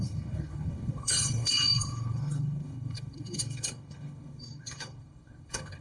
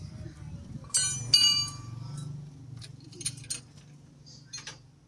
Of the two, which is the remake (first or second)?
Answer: first